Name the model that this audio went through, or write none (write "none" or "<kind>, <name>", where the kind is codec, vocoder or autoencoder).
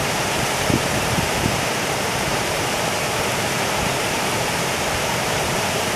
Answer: vocoder, BigVGAN v2